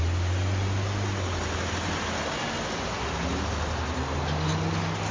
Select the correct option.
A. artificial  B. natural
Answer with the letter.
B